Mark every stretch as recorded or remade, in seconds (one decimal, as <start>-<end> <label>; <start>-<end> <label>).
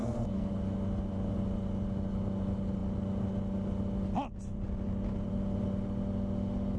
0.0-0.5 remade; 0.5-6.8 recorded